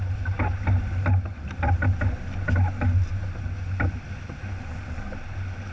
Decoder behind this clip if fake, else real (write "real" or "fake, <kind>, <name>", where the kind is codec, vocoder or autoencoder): real